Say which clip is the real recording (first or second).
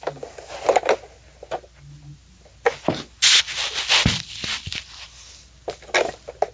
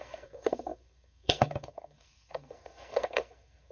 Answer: first